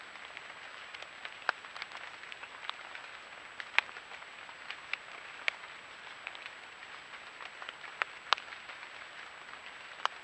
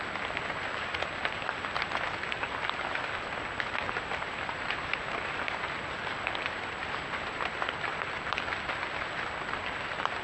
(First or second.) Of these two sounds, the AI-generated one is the second